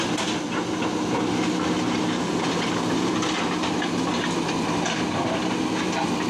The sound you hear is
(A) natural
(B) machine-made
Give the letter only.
A